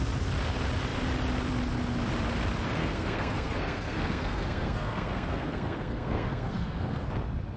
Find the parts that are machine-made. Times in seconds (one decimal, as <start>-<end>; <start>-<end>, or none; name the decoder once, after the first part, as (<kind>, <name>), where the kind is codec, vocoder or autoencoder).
2.8-7.1 (codec, SNAC)